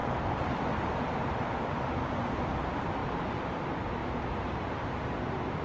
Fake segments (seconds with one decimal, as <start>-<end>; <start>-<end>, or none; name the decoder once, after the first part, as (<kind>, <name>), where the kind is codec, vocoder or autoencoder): 0.0-1.6 (vocoder, BigVGAN v2); 3.0-3.6